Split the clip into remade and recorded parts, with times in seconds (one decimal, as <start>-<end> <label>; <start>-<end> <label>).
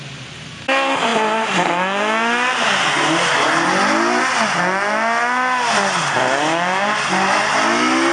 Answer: 0.0-8.1 recorded